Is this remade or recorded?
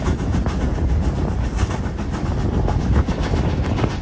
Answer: recorded